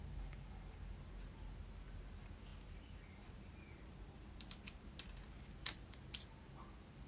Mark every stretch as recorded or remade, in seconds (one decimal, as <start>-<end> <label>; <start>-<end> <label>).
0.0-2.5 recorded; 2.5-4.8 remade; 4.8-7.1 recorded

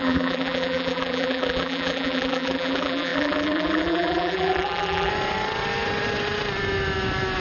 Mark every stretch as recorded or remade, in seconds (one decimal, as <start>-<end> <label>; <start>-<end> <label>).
0.0-5.1 remade; 5.1-7.4 recorded

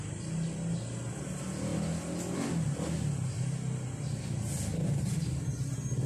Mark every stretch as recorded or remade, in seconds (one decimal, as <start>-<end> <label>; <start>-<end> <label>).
0.0-6.1 recorded

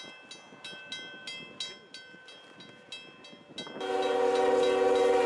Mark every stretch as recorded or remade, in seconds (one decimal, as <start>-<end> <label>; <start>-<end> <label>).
0.0-5.3 recorded

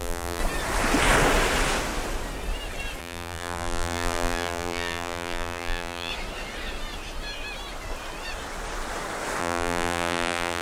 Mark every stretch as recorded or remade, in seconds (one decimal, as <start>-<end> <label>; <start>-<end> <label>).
0.0-0.4 remade; 0.4-3.0 recorded; 3.0-6.1 remade; 6.1-9.4 recorded; 9.4-10.6 remade